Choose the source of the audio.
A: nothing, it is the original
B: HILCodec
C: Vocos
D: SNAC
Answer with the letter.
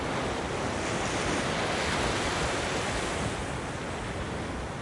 A